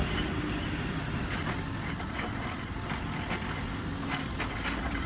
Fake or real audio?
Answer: real